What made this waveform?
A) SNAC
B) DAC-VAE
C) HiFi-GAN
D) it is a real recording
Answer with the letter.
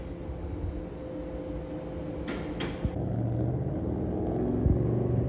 D